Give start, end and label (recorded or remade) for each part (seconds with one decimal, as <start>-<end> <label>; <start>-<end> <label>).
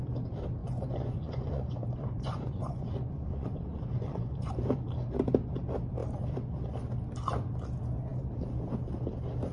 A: 0.0-0.6 recorded; 0.6-4.5 remade; 4.5-9.5 recorded